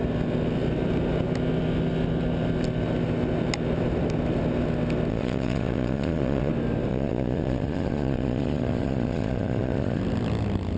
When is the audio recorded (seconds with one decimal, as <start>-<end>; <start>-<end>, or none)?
0.0-5.1; 6.5-6.9; 10.0-10.8